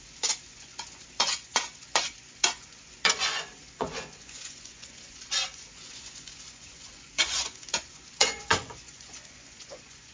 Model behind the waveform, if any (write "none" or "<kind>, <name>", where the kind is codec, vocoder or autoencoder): vocoder, Vocos